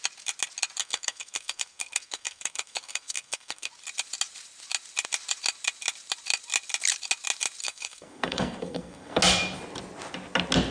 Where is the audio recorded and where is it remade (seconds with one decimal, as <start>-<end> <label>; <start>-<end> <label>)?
0.0-0.8 recorded; 0.8-3.7 remade; 3.7-7.6 recorded; 7.6-9.2 remade; 9.2-10.7 recorded